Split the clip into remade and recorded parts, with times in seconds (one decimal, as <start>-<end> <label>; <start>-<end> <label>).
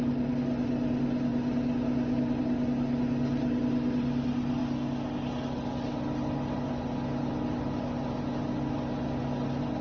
0.0-9.8 recorded